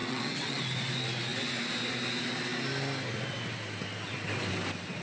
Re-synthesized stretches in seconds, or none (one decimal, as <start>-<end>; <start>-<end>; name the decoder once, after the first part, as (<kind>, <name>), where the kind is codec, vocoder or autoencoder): 0.0-0.6 (vocoder, WaveNeXt)